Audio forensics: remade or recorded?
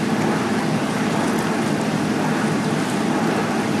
recorded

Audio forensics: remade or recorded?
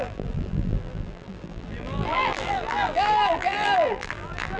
remade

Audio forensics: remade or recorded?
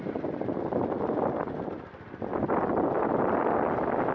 recorded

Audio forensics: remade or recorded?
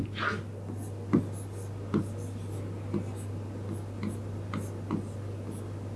recorded